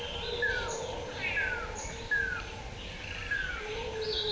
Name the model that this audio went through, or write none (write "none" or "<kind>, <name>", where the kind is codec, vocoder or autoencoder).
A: none